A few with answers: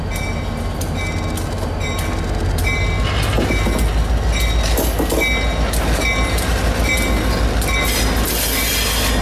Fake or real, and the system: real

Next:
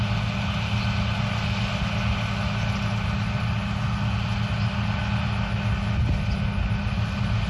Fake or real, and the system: real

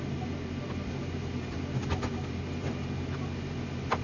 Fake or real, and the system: real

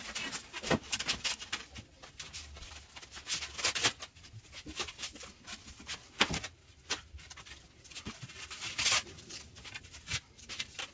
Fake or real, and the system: real